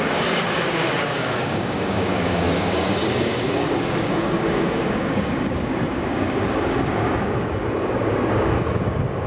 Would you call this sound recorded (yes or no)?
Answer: no